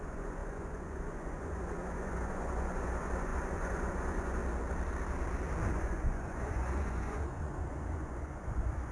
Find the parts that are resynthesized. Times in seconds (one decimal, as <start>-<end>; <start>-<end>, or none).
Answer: 0.0-4.4; 5.7-8.9